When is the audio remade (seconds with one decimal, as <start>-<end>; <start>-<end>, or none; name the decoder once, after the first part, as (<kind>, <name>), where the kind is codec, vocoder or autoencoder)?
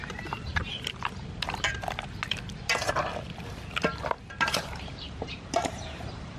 0.0-0.6 (vocoder, BigVGAN v2); 4.4-6.4